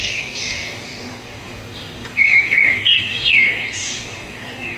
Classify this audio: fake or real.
fake